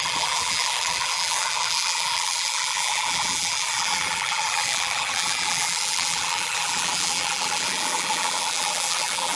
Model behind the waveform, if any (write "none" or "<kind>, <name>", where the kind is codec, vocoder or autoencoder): vocoder, BigVGAN v2